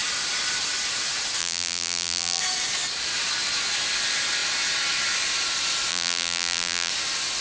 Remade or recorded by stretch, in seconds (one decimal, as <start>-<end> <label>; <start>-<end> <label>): 0.0-1.4 recorded; 1.4-2.4 remade; 2.4-5.9 recorded; 5.9-6.9 remade; 6.9-7.4 recorded